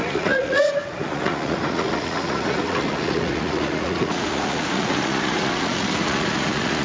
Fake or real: fake